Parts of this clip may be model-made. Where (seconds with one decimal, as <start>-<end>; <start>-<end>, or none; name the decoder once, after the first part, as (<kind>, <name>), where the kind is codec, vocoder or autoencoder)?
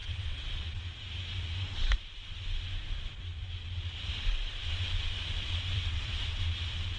0.0-0.8 (vocoder, WaveNeXt); 5.7-6.2